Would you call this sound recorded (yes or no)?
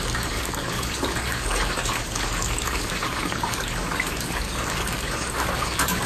no